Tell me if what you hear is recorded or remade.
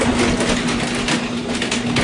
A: recorded